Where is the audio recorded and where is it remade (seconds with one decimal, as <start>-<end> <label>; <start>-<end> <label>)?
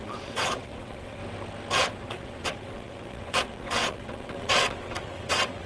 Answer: 0.0-1.2 remade; 1.2-1.8 recorded; 1.8-5.7 remade